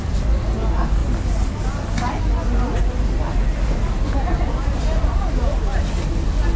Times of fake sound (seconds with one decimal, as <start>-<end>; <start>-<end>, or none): none